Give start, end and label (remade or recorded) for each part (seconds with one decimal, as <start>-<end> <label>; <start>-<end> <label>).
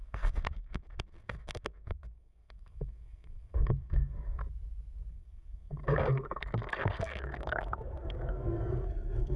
0.0-4.4 remade; 4.4-5.1 recorded; 5.1-9.4 remade